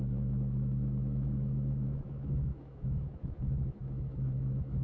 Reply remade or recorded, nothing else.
remade